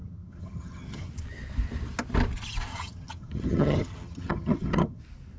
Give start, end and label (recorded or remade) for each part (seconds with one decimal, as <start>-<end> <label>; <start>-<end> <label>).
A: 0.0-1.1 remade; 1.1-2.7 recorded; 2.7-5.0 remade; 5.0-5.4 recorded